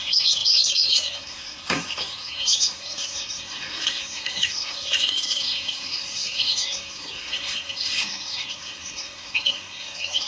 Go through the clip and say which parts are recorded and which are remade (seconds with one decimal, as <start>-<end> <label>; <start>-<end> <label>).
0.0-10.3 remade